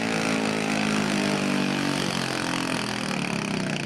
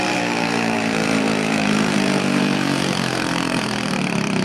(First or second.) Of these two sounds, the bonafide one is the first